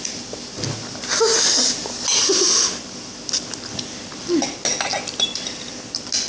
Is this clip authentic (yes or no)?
yes